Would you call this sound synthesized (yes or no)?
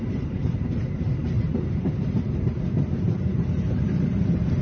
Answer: yes